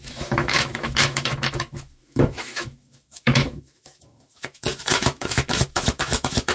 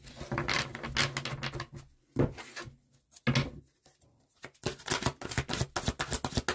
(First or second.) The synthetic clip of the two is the first